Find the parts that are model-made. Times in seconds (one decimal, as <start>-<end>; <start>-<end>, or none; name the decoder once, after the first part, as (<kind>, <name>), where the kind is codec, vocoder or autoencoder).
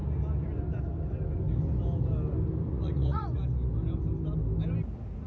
2.7-3.4 (vocoder, Vocos)